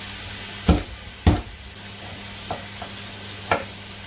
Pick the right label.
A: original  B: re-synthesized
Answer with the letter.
A